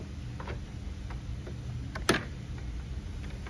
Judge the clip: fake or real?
real